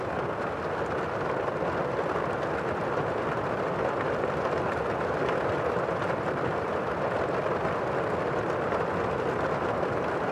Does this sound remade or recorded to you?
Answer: recorded